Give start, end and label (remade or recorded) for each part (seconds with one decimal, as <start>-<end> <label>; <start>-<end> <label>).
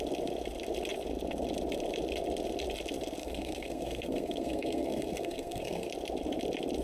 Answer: 0.0-3.2 recorded; 3.2-5.9 remade; 5.9-6.8 recorded